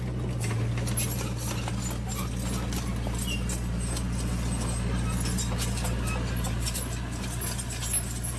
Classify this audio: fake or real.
real